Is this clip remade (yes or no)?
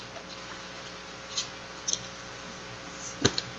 no